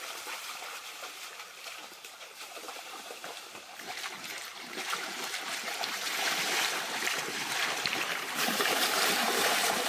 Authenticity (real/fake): fake